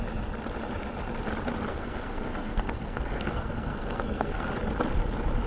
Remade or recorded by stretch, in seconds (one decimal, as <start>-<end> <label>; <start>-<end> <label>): 0.0-1.7 recorded; 1.7-4.5 remade; 4.5-5.5 recorded